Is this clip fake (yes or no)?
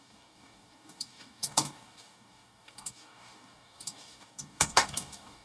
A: yes